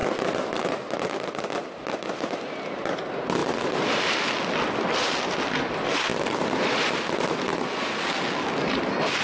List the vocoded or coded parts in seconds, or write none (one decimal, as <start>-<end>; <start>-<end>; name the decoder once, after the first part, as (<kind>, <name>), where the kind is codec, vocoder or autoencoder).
3.4-3.9 (vocoder, BigVGAN v2); 6.1-7.0